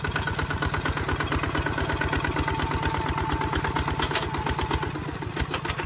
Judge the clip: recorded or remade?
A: recorded